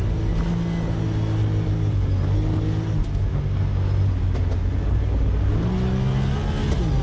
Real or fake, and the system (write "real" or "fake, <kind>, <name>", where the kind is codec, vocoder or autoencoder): real